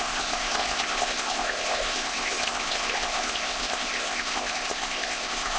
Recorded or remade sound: remade